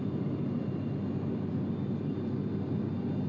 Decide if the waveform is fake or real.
real